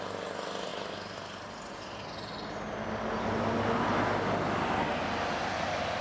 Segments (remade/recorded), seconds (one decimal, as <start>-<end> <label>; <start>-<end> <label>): 0.0-6.0 recorded